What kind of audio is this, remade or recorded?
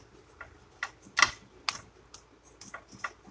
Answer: recorded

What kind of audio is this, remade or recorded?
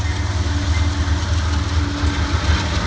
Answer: recorded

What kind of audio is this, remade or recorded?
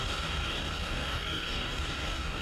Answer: remade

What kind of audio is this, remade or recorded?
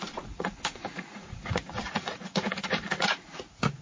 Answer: remade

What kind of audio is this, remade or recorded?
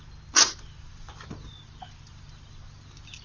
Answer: recorded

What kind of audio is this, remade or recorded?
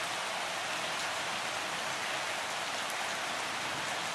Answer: recorded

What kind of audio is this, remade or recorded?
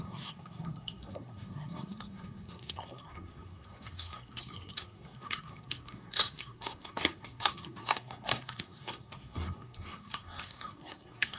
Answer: remade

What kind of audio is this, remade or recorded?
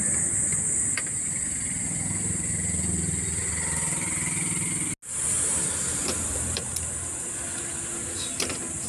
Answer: recorded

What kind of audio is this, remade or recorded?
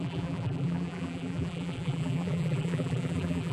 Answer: remade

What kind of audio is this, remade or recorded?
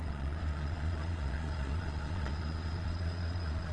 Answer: remade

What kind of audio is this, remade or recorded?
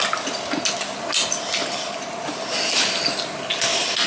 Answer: recorded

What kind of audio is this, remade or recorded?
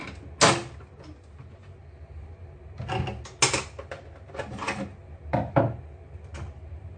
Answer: recorded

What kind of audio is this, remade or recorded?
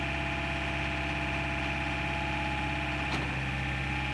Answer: recorded